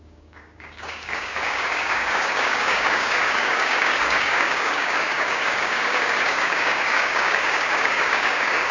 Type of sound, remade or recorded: remade